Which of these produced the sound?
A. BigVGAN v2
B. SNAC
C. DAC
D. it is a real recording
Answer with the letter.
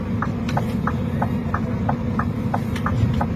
D